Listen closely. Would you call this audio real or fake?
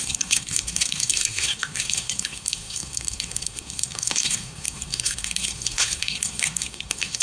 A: fake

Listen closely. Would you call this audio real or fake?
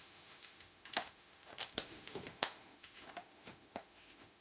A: fake